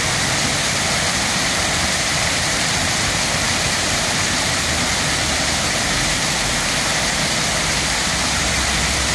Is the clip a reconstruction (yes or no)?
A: yes